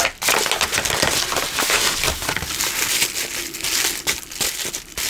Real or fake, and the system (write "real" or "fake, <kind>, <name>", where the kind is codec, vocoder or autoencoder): real